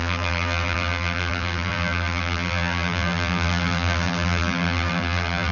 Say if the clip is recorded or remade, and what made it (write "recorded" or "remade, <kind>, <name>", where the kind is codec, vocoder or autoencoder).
remade, vocoder, BigVGAN v2